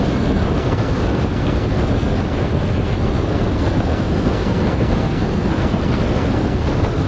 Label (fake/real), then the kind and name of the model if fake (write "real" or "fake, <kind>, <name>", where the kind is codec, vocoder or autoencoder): fake, codec, SNAC